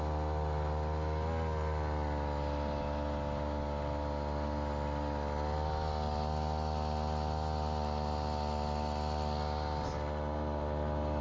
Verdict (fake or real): real